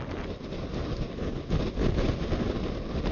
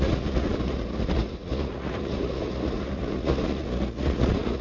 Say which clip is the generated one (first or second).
second